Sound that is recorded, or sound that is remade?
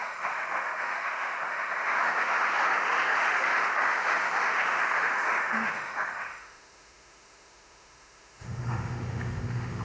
remade